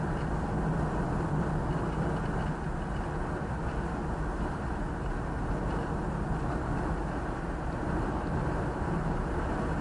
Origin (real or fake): real